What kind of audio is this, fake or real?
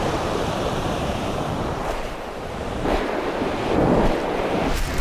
fake